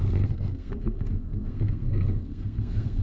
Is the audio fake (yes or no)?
yes